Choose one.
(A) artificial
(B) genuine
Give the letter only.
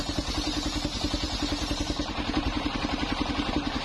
A